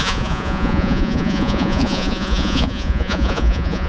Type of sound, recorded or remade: remade